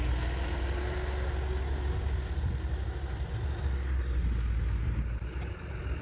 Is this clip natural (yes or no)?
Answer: yes